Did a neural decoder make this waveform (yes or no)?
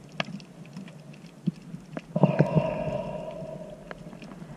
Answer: no